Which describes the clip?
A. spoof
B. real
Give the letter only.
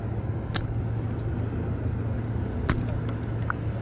B